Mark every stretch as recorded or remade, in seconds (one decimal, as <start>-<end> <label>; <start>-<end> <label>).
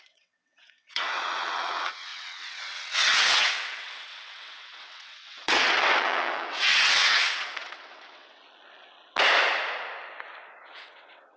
0.0-8.4 remade; 8.4-10.6 recorded; 10.6-11.4 remade